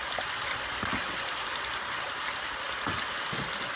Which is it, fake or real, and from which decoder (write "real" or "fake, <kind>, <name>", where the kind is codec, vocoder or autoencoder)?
real